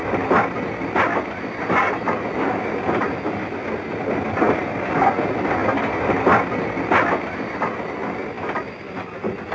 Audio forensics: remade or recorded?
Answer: recorded